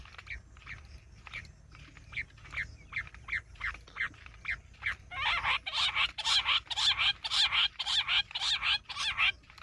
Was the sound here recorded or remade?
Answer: recorded